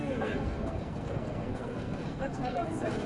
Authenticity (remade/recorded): remade